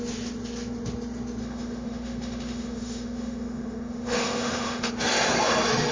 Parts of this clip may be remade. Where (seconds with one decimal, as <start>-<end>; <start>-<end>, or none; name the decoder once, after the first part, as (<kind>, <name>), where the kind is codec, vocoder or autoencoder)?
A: 1.4-4.9 (autoencoder, DAC-VAE)